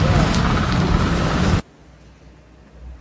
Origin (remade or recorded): recorded